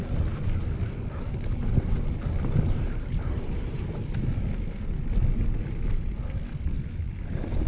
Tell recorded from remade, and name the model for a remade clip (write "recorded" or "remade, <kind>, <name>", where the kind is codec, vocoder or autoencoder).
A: recorded